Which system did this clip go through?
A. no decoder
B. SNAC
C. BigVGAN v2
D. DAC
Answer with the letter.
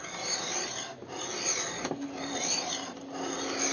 A